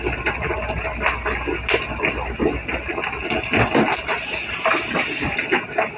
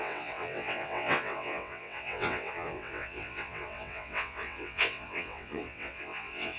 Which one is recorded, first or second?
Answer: first